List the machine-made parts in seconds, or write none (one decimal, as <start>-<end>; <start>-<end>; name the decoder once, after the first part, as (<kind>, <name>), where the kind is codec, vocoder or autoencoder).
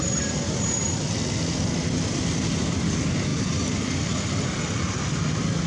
none